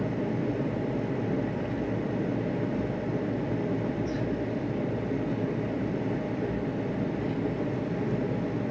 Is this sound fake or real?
real